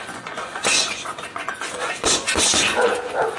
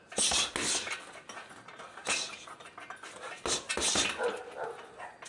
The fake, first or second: first